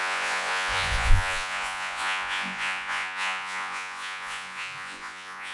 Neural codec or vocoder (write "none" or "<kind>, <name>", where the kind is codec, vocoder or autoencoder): vocoder, Vocos